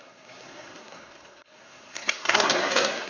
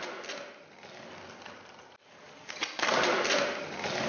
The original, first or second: second